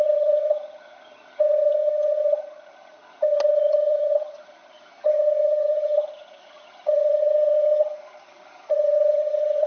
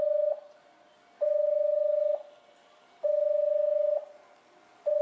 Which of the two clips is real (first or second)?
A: second